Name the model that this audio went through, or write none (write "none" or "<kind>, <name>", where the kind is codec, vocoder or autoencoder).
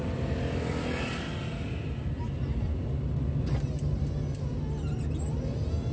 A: none